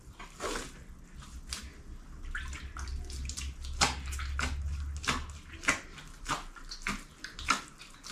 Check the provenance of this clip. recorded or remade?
recorded